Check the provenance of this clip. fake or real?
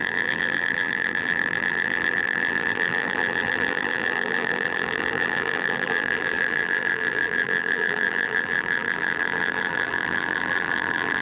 fake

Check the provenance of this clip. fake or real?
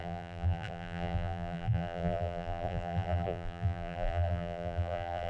fake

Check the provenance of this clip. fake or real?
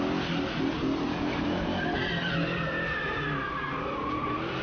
real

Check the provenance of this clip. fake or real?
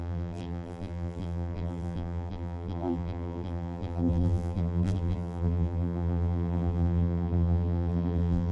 fake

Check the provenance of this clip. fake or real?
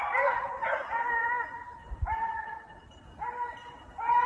real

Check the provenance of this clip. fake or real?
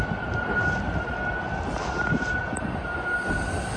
real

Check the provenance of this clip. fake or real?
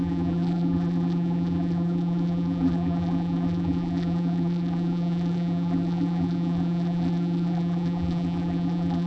fake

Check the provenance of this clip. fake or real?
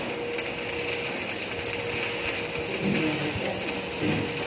real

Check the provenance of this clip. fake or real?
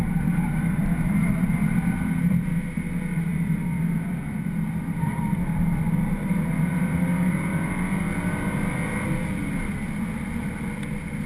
real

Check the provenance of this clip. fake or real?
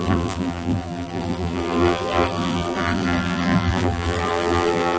fake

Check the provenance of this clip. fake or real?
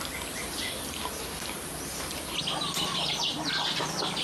fake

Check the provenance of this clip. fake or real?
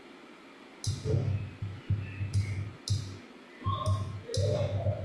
real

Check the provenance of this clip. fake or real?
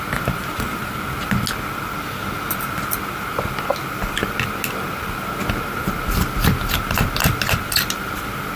real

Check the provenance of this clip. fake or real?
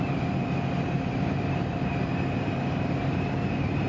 fake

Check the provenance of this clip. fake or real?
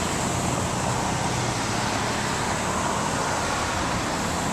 real